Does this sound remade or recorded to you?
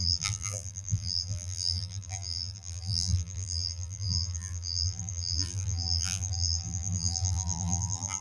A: remade